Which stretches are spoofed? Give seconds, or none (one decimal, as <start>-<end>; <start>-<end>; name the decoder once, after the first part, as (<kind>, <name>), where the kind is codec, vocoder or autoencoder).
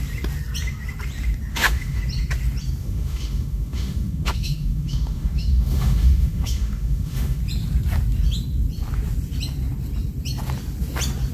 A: 1.5-2.0 (autoencoder, DAC-VAE); 2.8-7.4